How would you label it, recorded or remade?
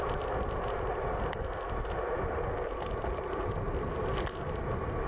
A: recorded